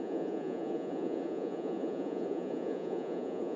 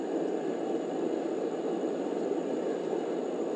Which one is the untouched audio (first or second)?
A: second